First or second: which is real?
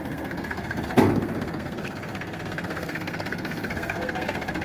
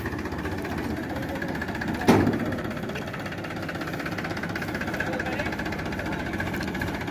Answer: second